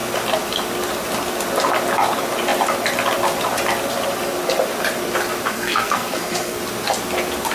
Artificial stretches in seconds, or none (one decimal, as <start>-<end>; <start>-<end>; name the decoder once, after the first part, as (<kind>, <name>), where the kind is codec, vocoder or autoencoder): 5.5-6.6 (codec, SNAC)